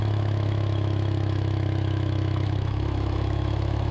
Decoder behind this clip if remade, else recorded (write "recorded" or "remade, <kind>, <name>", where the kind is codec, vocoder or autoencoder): remade, autoencoder, DAC-VAE